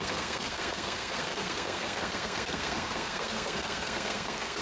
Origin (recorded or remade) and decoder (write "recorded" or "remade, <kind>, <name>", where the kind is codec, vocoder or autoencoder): remade, codec, SNAC